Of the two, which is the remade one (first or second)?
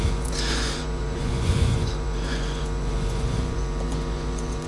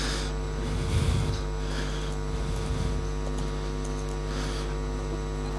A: first